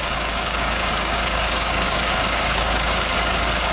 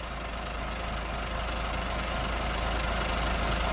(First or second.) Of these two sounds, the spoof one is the first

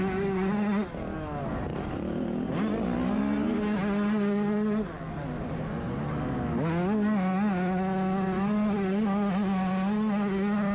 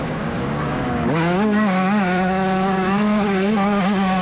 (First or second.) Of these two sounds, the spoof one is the second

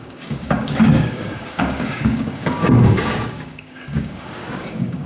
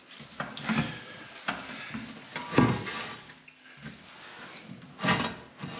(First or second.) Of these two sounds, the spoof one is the first